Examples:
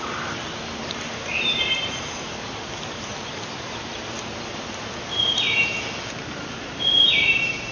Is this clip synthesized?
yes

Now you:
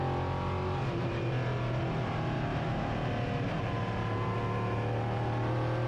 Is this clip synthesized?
no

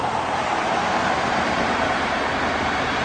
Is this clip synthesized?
yes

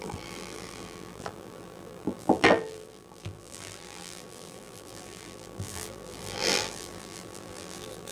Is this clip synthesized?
yes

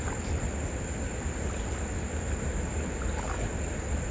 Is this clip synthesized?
no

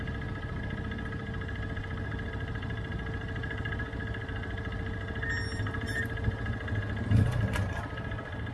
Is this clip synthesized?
no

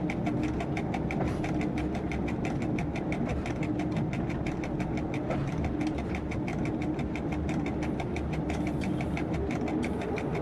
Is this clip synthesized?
no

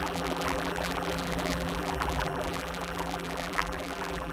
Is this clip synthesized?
yes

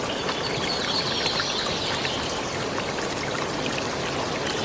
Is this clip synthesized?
yes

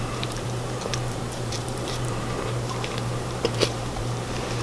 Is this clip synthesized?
yes